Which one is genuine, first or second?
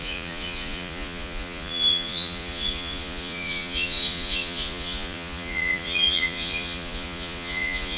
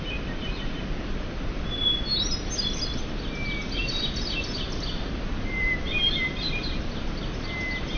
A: second